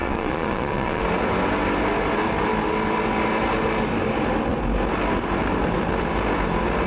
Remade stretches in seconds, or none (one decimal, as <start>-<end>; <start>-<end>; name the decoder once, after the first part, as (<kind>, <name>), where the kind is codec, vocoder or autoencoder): 0.0-1.0 (vocoder, Vocos)